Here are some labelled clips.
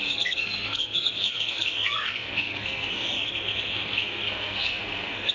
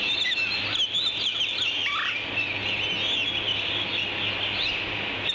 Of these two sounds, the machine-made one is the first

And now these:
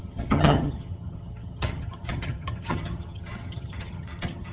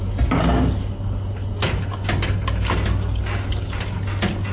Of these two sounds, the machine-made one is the first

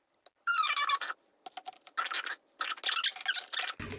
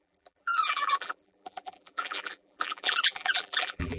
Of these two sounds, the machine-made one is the second